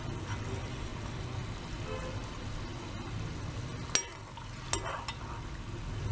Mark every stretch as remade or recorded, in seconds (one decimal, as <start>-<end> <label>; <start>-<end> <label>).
0.0-6.1 recorded